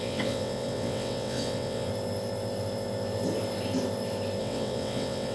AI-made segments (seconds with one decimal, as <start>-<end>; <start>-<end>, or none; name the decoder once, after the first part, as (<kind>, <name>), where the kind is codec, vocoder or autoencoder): 0.0-1.9 (vocoder, WaveNeXt); 4.4-5.3